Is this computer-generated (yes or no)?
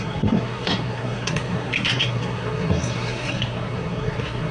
yes